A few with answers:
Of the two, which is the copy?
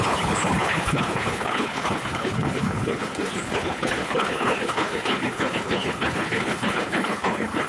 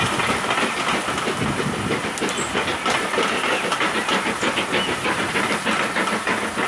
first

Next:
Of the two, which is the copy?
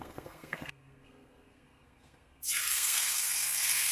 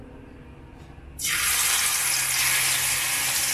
first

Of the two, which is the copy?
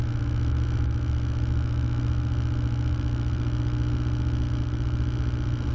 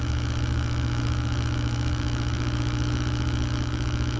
second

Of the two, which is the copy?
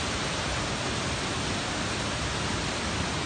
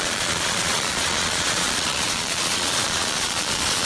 second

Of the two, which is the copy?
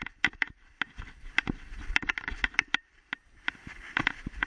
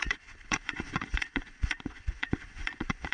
second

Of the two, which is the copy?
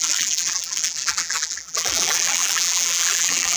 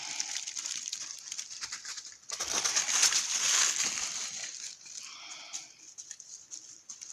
first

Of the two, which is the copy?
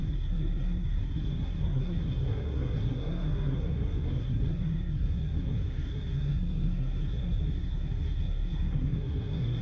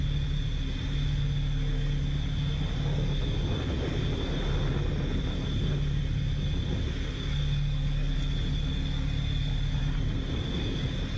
first